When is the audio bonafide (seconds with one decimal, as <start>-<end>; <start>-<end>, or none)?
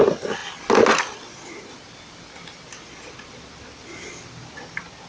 0.0-5.1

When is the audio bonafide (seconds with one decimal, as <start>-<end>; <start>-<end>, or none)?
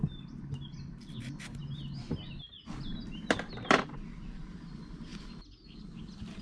0.0-6.4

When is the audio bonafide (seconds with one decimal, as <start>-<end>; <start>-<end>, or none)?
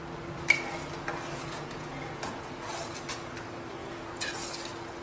0.0-1.4; 2.7-3.8; 4.4-5.0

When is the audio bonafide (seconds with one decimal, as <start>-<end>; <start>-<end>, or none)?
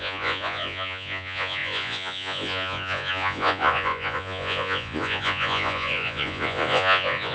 none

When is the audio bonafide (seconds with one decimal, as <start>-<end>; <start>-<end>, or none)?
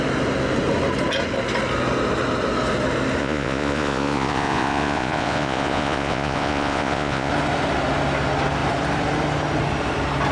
0.0-3.2; 7.3-10.3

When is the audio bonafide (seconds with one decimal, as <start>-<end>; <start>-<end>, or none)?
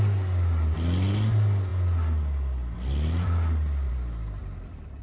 0.0-5.0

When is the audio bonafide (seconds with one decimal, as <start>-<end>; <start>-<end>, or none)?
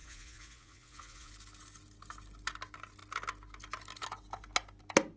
1.3-5.2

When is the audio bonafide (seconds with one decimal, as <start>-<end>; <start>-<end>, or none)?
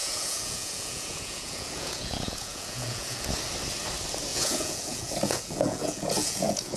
3.3-4.3